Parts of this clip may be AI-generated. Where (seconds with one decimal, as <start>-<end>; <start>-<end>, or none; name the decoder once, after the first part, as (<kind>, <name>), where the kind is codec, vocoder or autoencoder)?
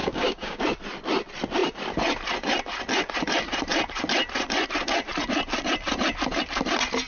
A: 0.0-0.6 (codec, DAC)